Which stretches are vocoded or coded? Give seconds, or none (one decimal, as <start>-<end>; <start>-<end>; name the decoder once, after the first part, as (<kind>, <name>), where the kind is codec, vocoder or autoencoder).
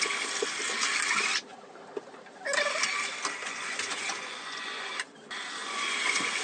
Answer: 3.4-4.9 (vocoder, Vocos); 5.6-6.4